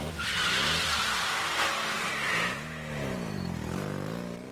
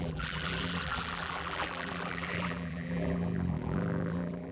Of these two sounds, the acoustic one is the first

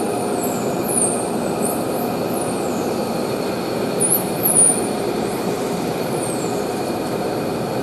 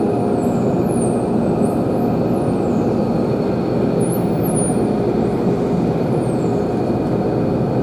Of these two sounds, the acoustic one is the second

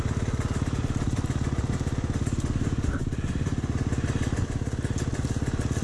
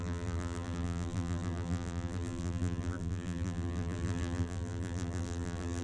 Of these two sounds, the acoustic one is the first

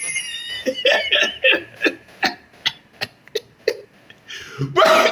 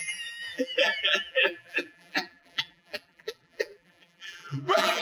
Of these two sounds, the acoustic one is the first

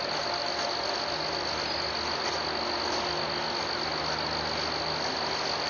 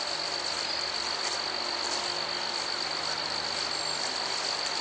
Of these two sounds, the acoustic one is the first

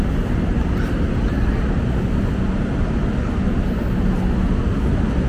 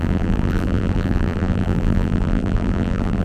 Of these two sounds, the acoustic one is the first